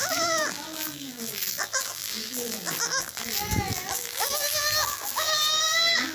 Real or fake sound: fake